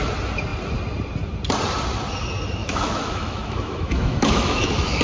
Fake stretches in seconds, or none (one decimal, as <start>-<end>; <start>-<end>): 2.6-5.0